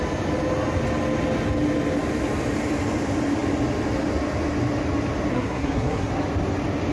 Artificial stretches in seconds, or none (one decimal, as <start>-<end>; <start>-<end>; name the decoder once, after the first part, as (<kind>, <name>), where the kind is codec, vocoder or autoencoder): 5.3-6.1 (codec, SNAC)